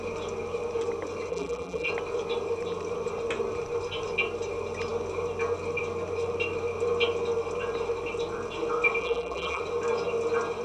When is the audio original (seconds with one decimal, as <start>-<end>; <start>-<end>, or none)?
0.0-1.3; 1.9-9.0; 9.6-10.6